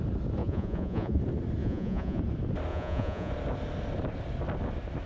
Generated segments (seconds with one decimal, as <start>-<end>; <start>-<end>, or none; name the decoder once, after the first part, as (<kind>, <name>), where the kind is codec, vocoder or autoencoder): 0.4-1.2 (vocoder, Vocos); 1.6-2.2; 2.7-3.3